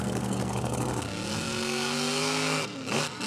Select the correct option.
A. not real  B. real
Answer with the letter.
A